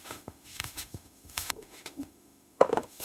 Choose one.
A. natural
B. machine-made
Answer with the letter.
B